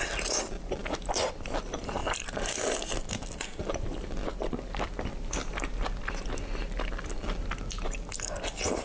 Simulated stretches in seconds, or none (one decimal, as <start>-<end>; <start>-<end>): none